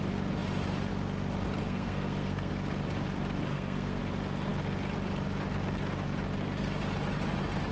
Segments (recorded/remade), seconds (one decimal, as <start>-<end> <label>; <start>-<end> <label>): 0.0-1.6 recorded; 1.6-2.5 remade; 2.5-3.5 recorded; 3.5-4.0 remade; 4.0-7.7 recorded